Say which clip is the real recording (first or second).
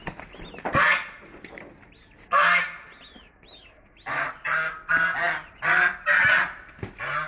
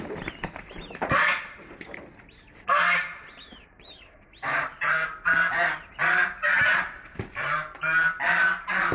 first